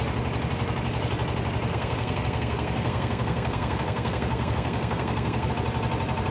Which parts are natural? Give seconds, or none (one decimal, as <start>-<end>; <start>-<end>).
0.0-1.7; 5.5-6.3